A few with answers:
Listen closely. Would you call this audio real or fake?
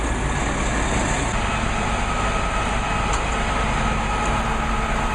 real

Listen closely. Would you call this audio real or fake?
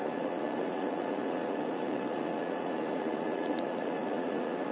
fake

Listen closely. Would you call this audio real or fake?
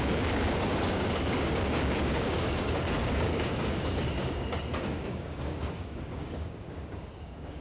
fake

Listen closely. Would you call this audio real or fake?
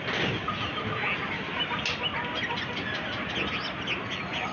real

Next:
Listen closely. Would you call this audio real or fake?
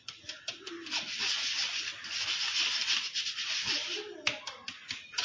real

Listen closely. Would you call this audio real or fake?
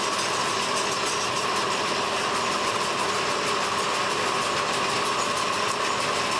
real